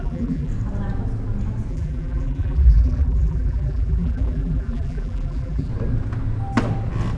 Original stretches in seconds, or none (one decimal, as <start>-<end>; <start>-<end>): 0.5-1.7; 5.7-7.2